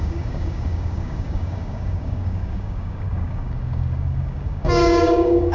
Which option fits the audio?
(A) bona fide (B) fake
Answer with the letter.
B